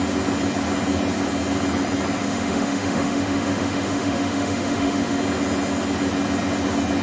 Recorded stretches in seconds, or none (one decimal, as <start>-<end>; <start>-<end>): 0.0-2.2; 5.2-7.0